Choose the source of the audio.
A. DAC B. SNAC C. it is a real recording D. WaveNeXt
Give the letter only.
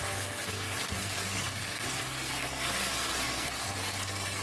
B